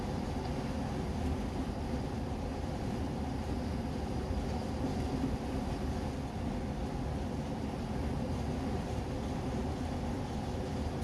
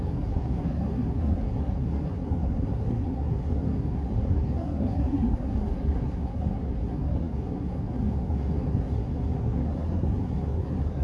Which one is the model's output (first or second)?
second